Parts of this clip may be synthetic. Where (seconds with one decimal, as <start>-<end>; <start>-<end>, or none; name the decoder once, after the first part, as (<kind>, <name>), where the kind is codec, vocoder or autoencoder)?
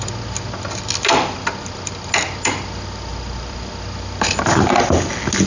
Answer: 3.1-3.7 (vocoder, BigVGAN v2)